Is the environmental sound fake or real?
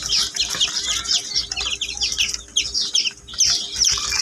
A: real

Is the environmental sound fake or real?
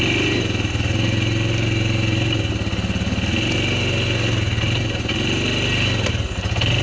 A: real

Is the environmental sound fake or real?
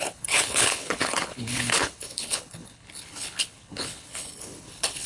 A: fake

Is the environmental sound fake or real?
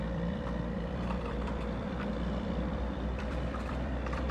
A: fake